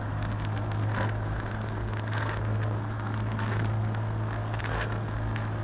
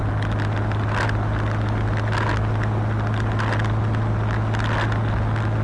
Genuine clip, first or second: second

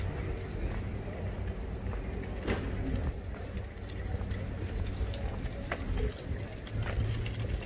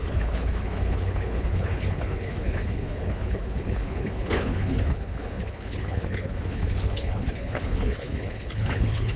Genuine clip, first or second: first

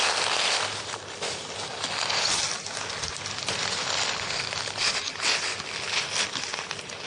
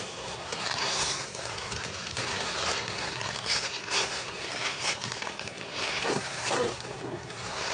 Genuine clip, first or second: first